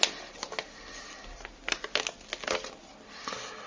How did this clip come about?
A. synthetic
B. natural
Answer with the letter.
B